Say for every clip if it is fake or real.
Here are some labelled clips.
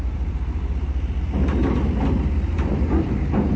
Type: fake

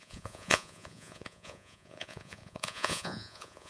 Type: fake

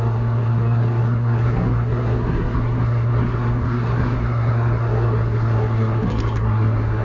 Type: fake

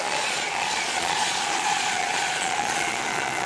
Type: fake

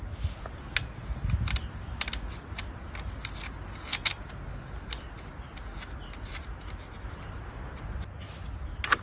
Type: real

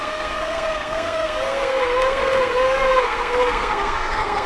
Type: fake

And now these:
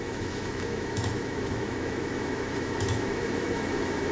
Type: fake